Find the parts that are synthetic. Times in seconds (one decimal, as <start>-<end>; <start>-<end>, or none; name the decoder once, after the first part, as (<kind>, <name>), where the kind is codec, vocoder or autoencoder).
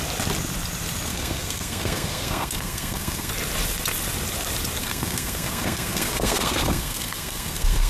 1.1-3.3 (codec, SNAC); 4.8-7.9